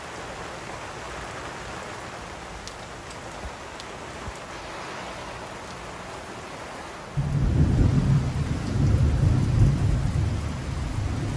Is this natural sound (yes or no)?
yes